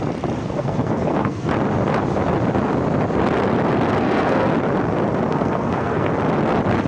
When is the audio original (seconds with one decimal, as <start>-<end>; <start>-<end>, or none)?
0.0-0.4; 1.5-3.9; 4.5-5.3; 6.1-6.9